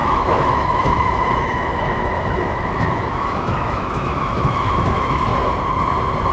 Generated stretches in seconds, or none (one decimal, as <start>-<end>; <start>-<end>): 0.0-5.3